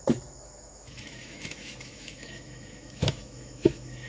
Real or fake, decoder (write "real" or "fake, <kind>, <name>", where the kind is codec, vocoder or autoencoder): fake, autoencoder, DAC-VAE